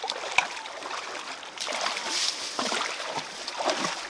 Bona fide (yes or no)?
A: yes